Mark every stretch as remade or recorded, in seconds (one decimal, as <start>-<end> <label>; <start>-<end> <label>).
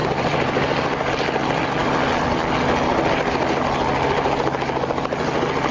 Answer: 0.0-1.1 remade; 1.1-5.7 recorded